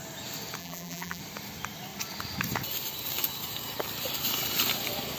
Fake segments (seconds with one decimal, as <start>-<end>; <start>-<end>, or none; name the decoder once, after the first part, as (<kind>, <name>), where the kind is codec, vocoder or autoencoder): 0.6-1.2 (vocoder, BigVGAN v2)